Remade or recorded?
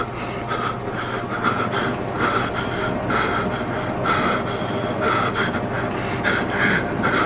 recorded